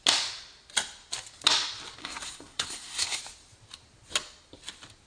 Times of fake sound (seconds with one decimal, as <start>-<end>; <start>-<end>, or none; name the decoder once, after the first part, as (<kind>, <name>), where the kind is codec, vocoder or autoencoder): 2.0-3.2 (codec, SNAC)